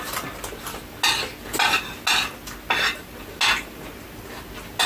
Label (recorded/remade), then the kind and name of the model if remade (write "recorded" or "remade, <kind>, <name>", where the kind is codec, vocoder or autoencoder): recorded